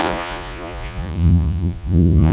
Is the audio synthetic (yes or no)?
yes